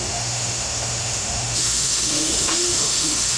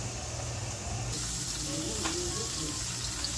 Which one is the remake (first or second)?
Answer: first